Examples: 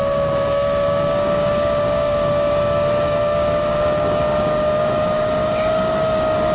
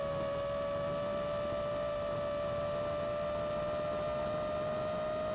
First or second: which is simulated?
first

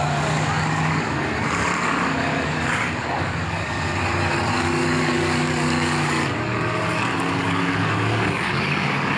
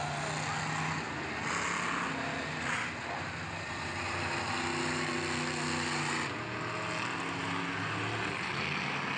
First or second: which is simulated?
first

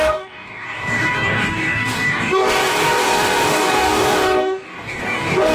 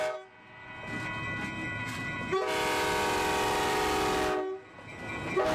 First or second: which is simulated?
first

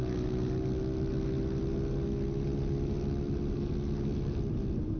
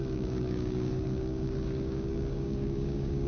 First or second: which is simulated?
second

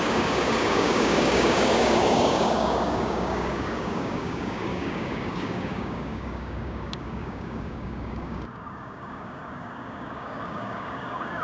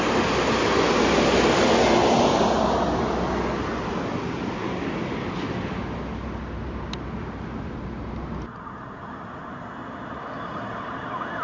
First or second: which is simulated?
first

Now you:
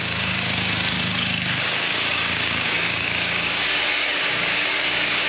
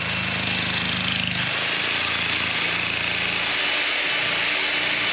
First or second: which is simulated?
first